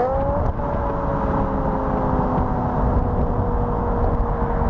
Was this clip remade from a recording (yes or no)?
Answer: no